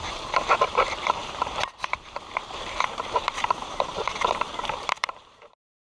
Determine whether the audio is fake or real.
fake